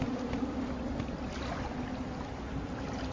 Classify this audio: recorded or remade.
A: remade